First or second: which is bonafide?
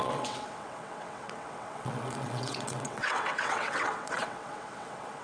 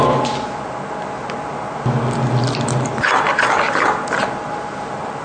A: second